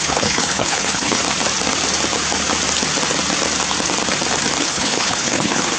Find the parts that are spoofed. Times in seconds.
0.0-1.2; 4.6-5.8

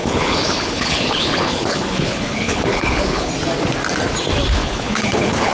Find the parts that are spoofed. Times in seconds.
0.0-3.3; 4.6-5.5

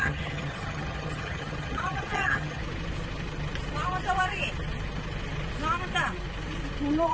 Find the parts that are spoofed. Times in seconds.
0.0-2.6

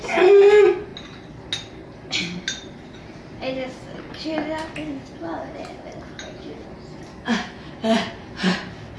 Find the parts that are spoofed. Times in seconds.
7.1-7.7

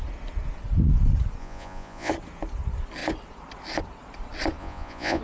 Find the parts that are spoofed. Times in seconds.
1.4-2.1; 4.6-5.2